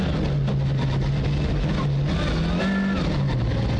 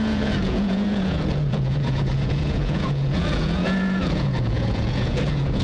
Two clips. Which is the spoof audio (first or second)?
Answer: second